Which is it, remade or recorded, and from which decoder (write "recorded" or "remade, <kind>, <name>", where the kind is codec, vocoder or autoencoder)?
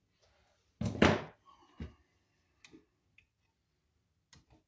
recorded